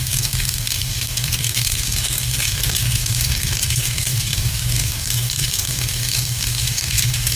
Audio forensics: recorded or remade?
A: remade